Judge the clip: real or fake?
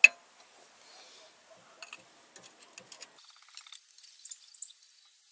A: real